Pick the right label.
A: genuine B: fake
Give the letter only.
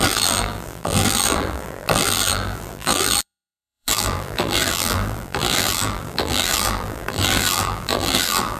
B